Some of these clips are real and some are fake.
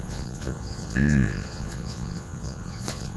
fake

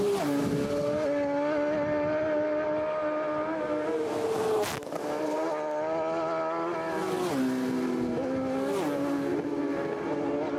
real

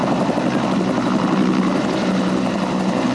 real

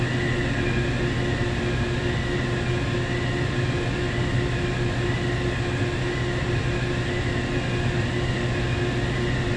real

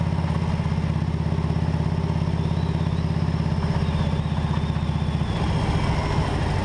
real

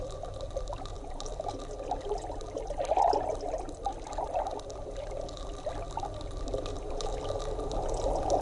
real